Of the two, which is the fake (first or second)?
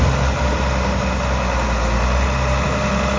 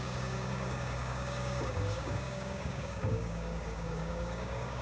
second